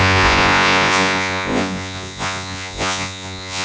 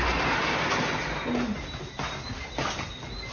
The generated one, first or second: first